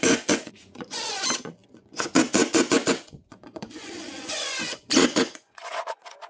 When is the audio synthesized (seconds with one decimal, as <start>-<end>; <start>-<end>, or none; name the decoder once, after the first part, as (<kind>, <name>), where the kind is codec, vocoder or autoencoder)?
0.0-6.3 (vocoder, Vocos)